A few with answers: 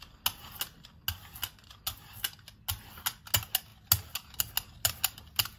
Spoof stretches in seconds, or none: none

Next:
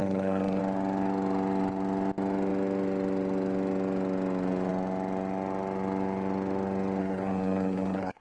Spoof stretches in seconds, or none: 0.0-0.6 (codec, SNAC); 7.0-8.2

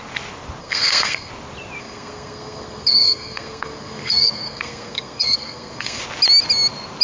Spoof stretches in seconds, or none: 0.6-1.3 (codec, SNAC); 1.8-6.0

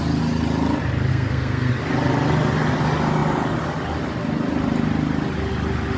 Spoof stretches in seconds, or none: 1.1-1.7 (codec, SNAC)

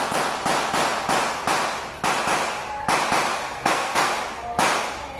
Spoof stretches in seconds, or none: 3.3-4.1 (codec, SNAC)

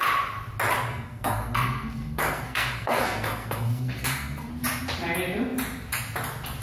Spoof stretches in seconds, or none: 0.9-4.5 (codec, SNAC)